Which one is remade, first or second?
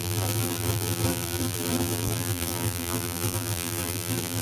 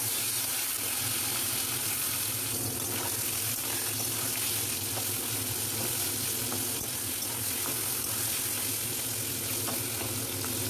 first